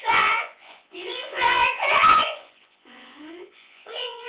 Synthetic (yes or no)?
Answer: yes